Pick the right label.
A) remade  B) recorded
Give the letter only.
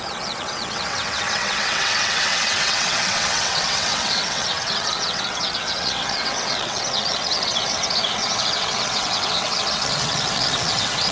A